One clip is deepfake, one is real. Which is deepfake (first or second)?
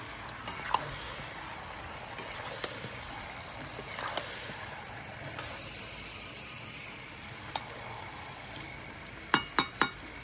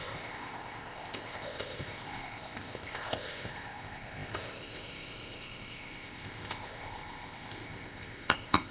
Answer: second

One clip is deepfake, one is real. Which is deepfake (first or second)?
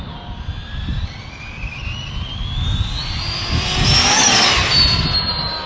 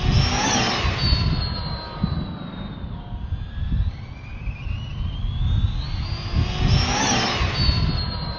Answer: first